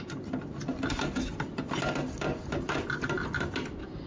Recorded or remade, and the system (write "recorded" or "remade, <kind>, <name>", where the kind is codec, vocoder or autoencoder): recorded